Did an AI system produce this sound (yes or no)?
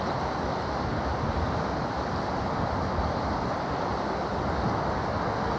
no